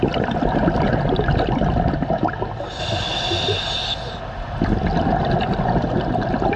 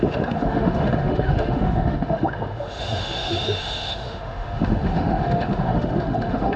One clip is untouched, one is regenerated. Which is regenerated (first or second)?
second